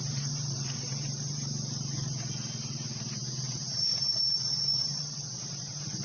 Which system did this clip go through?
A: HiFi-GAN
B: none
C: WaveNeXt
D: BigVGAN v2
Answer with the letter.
D